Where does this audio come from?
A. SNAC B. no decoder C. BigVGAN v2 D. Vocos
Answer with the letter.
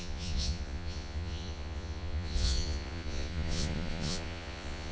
D